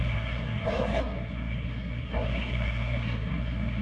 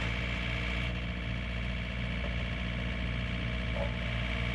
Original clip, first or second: second